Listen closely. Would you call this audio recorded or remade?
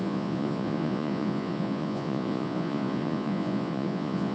remade